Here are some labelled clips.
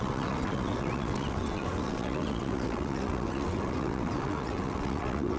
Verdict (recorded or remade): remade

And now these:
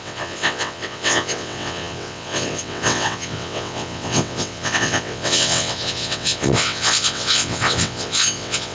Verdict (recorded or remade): remade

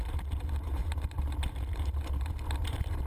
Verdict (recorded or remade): remade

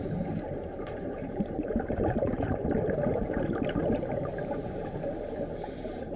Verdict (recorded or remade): remade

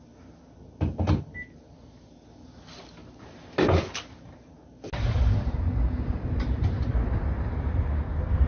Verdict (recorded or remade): recorded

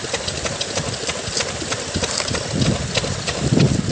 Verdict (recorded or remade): recorded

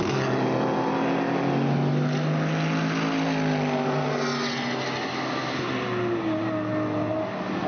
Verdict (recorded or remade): recorded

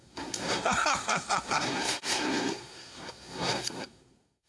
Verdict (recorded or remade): remade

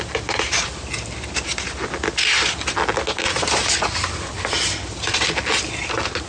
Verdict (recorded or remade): recorded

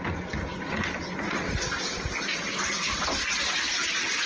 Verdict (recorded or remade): recorded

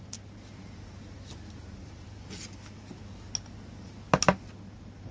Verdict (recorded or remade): recorded